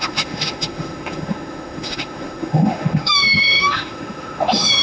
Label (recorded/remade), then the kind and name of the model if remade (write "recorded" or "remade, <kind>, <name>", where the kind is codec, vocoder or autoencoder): remade, autoencoder, DAC-VAE